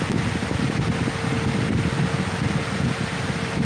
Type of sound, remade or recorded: recorded